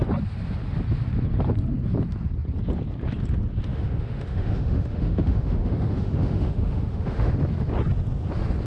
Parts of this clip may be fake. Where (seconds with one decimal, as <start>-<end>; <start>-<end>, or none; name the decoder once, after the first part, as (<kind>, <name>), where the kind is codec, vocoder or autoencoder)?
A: 3.7-7.3 (autoencoder, DAC-VAE)